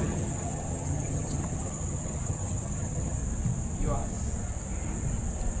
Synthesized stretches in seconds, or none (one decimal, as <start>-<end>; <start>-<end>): 0.0-3.2